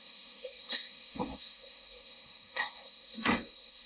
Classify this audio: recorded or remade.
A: remade